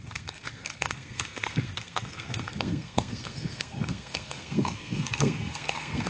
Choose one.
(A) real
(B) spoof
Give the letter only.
B